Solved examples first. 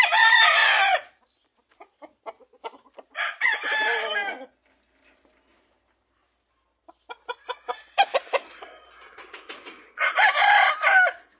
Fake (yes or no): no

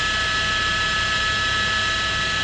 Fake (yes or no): no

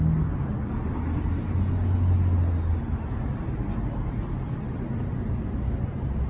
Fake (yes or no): no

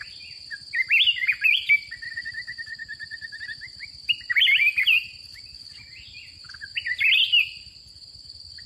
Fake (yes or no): no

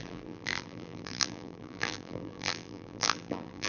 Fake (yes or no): yes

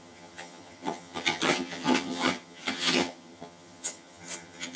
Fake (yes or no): yes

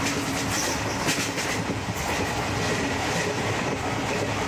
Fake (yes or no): no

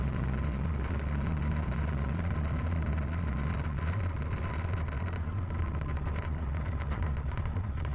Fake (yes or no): yes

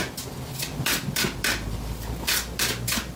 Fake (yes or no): no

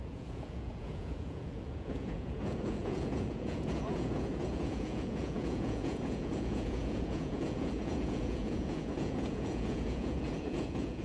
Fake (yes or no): yes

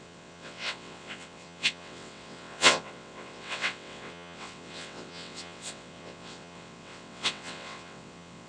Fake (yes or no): yes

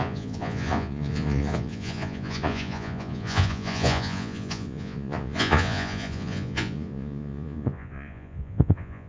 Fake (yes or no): yes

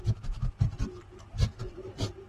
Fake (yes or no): no